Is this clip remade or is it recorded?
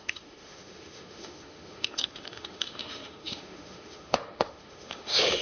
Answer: remade